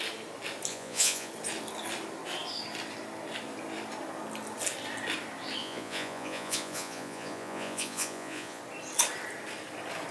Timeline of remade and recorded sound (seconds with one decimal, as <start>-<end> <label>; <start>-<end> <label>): 0.0-0.7 recorded; 0.7-1.3 remade; 1.3-5.6 recorded; 5.6-8.6 remade; 8.6-10.1 recorded